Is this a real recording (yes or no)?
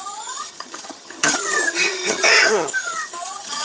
no